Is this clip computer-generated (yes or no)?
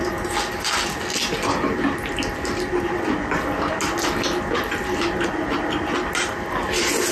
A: no